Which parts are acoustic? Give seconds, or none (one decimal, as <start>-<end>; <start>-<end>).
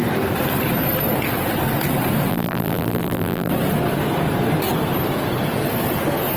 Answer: 0.0-2.3; 3.5-6.4